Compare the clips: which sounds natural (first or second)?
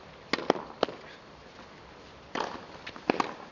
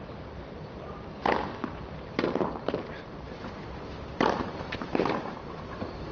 first